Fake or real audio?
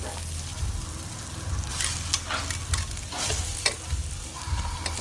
real